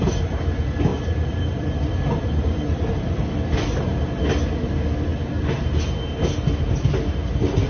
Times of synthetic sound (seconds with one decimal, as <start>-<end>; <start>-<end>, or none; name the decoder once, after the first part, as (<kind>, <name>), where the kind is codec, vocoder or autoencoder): 0.9-3.8 (vocoder, BigVGAN v2)